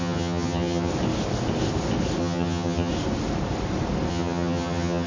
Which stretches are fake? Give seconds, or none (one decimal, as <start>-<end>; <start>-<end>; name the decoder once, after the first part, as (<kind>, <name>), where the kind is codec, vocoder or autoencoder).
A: 0.0-0.9 (vocoder, HiFi-GAN); 2.2-2.9; 4.1-5.1